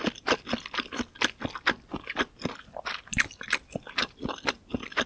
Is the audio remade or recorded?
recorded